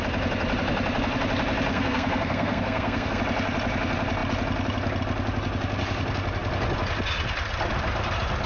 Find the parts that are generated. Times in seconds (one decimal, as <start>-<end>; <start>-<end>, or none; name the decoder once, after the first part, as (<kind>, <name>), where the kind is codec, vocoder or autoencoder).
1.7-3.2 (codec, SNAC)